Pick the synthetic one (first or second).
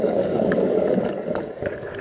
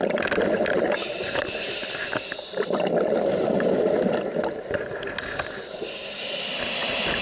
first